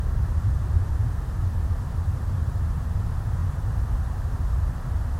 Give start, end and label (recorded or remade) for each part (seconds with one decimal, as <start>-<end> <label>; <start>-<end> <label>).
0.0-5.2 remade